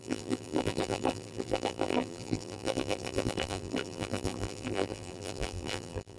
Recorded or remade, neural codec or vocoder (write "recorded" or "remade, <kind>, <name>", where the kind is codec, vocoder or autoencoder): remade, vocoder, BigVGAN v2